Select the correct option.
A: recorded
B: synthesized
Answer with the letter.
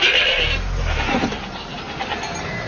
A